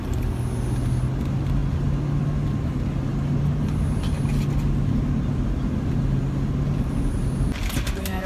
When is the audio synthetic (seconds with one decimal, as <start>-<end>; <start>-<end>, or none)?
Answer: none